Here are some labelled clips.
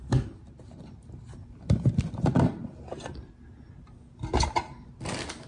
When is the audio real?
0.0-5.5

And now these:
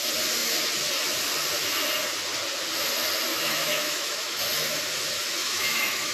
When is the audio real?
0.0-3.3; 4.4-5.4

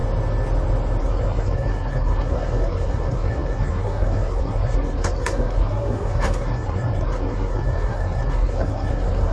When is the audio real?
0.0-1.0